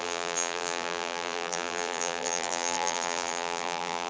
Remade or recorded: remade